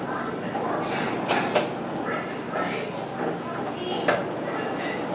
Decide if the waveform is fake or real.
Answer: real